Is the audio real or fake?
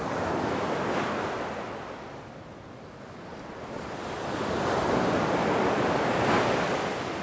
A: real